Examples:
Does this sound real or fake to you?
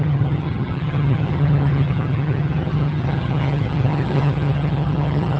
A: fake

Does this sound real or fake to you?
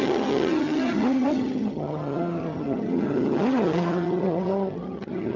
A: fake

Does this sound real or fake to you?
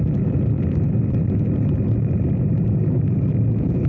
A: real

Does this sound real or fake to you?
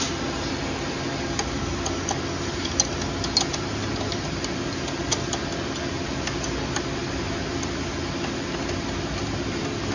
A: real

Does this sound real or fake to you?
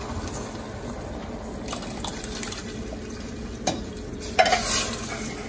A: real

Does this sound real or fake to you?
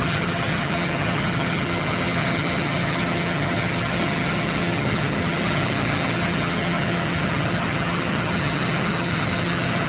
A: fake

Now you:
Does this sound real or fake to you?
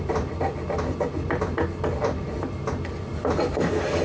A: real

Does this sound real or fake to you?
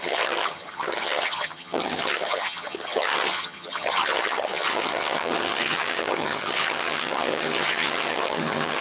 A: fake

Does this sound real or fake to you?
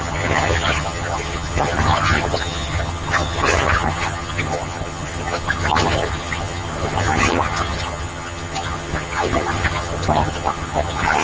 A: fake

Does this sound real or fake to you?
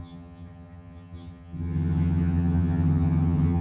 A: fake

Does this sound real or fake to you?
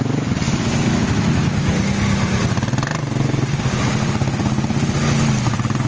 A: real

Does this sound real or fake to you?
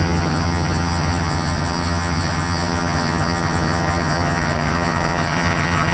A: fake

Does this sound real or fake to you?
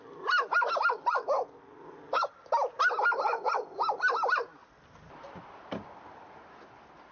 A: real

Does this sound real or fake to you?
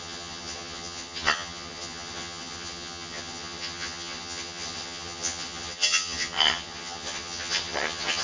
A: fake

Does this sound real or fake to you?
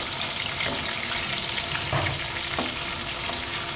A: real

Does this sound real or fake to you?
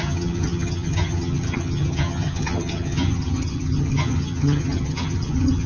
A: fake